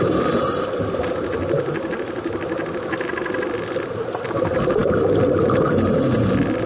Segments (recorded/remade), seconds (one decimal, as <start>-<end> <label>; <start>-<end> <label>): 0.0-6.7 recorded